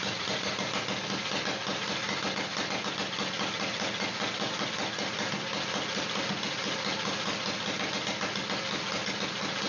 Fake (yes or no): no